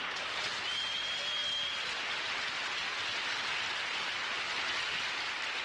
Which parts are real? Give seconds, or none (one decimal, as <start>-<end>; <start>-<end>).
0.0-5.6